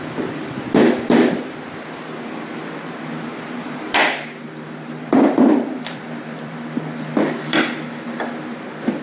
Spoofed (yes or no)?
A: yes